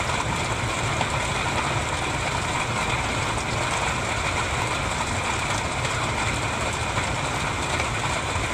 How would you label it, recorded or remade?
recorded